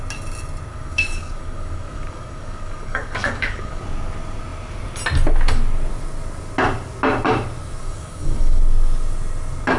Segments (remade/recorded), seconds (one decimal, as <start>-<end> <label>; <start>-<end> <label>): 0.0-0.7 recorded; 0.7-3.8 remade; 3.8-7.8 recorded; 7.8-8.6 remade; 8.6-9.8 recorded

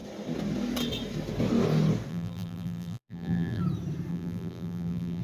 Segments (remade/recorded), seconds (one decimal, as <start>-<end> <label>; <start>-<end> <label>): 0.0-2.1 recorded; 2.1-3.6 remade; 3.6-4.1 recorded; 4.1-5.2 remade

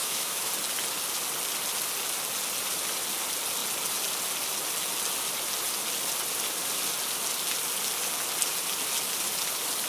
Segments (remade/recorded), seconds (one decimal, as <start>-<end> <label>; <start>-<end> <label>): 0.0-0.5 remade; 0.5-9.9 recorded

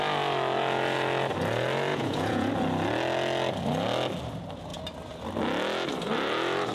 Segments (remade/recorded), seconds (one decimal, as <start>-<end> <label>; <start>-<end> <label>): 0.0-1.9 recorded; 1.9-2.5 remade; 2.5-6.7 recorded